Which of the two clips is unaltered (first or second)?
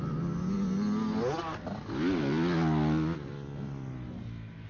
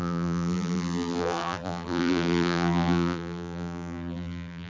first